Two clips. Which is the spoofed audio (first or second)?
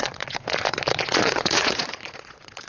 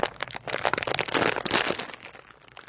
first